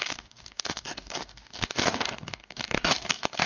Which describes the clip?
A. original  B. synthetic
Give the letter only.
B